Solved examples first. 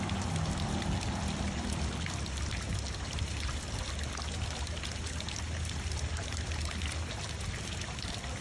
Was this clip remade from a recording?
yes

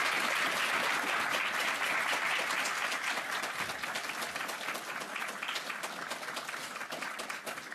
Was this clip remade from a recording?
no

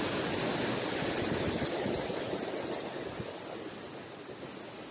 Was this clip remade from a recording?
no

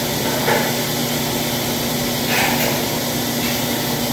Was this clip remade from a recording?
no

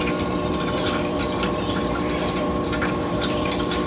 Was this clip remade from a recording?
yes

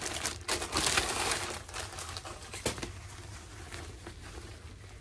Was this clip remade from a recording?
no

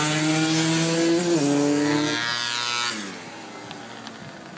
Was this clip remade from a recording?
no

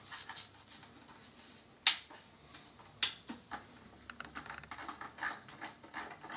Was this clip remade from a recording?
no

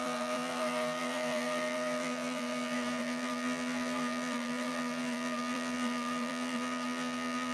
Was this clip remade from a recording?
yes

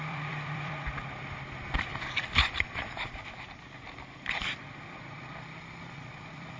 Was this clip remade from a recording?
yes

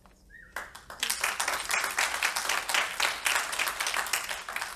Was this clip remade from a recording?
no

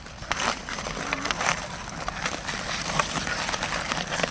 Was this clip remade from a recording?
no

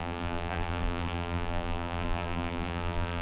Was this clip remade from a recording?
yes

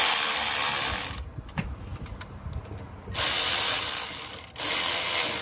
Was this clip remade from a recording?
no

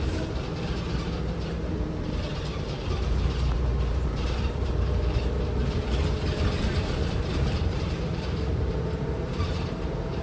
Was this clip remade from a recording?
yes